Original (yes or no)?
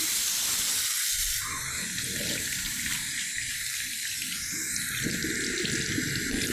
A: yes